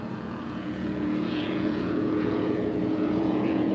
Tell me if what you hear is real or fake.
fake